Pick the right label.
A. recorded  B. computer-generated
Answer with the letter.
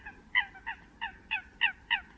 A